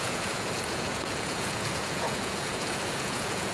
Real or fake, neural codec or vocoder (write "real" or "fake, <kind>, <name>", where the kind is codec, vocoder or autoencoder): fake, vocoder, Vocos